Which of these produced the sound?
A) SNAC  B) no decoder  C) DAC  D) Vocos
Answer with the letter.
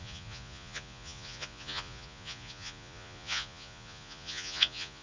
D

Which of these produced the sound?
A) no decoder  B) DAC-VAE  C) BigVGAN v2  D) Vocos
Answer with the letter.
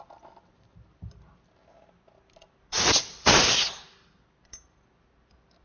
A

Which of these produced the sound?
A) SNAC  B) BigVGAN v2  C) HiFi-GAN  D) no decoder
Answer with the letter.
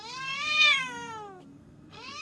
A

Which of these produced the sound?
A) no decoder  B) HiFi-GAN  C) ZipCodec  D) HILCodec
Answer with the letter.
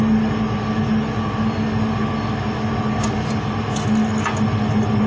A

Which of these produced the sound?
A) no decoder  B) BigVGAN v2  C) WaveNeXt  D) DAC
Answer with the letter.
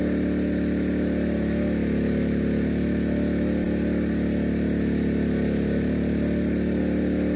A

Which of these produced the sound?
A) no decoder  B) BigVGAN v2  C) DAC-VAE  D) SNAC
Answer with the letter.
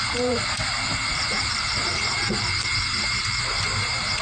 B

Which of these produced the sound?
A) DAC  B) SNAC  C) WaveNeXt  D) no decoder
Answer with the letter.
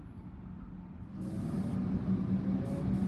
D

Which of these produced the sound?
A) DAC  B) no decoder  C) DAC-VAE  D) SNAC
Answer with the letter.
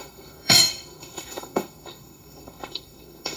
D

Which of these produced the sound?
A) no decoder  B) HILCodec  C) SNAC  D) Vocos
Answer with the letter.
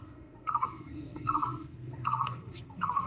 C